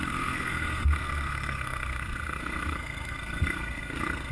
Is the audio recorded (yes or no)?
no